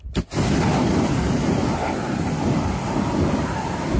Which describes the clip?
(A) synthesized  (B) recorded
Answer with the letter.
B